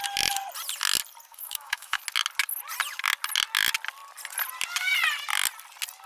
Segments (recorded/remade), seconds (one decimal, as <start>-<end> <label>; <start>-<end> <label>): 0.0-1.3 recorded; 1.3-2.0 remade; 2.0-6.1 recorded